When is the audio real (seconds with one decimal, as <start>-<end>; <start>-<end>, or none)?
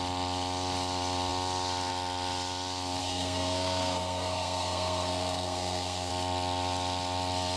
0.0-3.0; 6.1-7.6